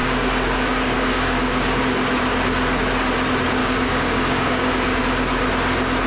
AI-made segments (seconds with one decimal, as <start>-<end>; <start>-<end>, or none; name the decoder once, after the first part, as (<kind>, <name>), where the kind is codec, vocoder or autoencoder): 0.0-1.8 (codec, DAC); 3.6-5.0